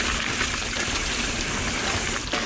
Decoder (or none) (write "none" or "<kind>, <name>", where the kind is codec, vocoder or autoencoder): none